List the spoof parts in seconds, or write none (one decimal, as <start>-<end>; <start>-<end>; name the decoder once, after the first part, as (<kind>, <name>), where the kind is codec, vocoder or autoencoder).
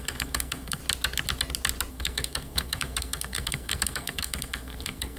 0.0-0.8 (codec, SNAC); 1.9-5.2